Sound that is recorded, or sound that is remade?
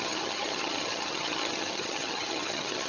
remade